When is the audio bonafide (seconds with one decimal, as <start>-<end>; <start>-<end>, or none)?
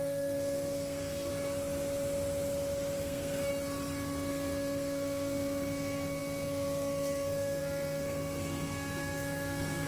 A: 1.3-3.0; 3.5-4.3